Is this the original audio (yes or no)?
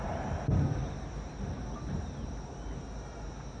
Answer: yes